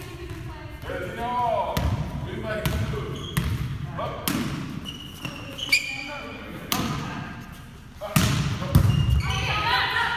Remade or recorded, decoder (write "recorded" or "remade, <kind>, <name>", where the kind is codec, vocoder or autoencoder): recorded